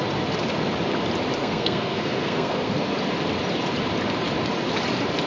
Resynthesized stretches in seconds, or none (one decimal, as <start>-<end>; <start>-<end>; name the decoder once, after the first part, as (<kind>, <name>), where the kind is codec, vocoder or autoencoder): 1.4-2.9 (codec, SNAC)